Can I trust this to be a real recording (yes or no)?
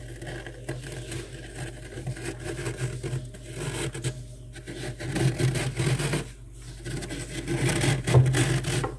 yes